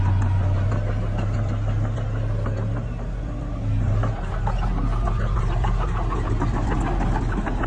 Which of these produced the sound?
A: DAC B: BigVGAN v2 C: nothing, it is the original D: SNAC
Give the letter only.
C